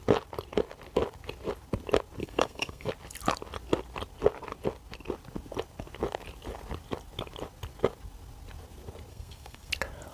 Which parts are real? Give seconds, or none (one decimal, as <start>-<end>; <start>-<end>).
0.0-2.2; 2.9-9.1; 9.7-10.1